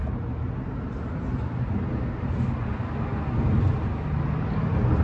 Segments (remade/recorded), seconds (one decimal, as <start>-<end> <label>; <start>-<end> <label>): 0.0-5.0 recorded